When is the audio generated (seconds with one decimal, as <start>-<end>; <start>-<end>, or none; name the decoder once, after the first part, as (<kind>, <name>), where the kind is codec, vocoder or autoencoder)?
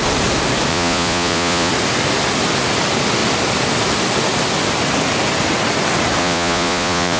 0.7-1.7 (vocoder, Vocos); 6.2-7.2